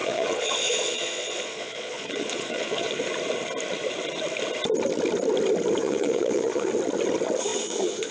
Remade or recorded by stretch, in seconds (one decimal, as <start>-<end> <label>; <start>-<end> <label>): 0.0-3.0 remade; 3.0-5.8 recorded; 5.8-6.7 remade; 6.7-7.5 recorded; 7.5-8.1 remade